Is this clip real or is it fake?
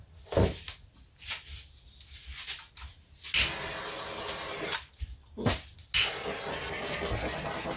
real